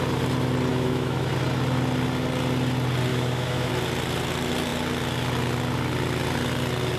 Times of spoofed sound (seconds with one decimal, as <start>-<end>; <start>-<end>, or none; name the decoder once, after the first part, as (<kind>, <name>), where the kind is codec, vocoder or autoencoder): 0.7-1.3 (autoencoder, DAC-VAE); 3.1-3.7